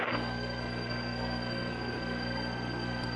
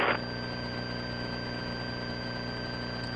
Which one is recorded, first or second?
second